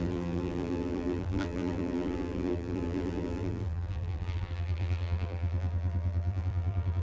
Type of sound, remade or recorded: remade